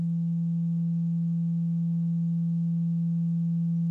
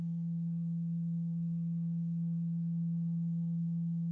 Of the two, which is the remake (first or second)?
second